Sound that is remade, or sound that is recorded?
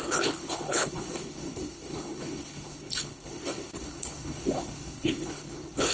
remade